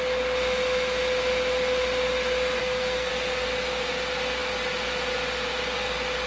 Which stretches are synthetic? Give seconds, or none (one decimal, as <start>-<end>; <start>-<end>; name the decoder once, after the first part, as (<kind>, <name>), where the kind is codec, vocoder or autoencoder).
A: 2.6-3.1 (codec, SNAC)